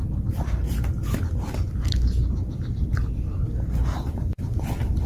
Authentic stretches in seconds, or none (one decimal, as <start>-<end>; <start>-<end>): 0.0-5.1